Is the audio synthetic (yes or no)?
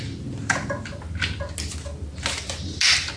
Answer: no